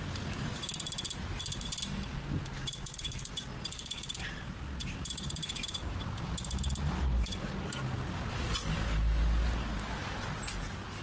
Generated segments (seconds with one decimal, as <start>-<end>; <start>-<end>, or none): 4.8-6.6